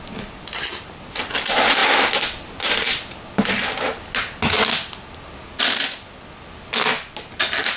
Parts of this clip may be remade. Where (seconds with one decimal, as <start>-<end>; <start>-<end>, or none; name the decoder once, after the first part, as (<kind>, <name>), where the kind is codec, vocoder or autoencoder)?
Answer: none